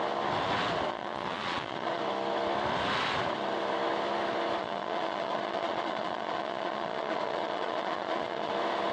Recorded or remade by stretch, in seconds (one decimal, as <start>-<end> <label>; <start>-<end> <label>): 0.0-0.9 recorded; 0.9-2.0 remade; 2.0-4.6 recorded; 4.6-8.5 remade; 8.5-8.9 recorded